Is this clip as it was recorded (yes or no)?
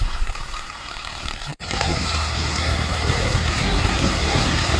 no